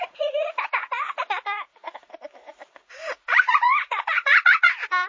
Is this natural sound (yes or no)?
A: no